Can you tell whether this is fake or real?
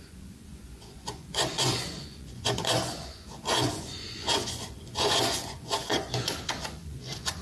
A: fake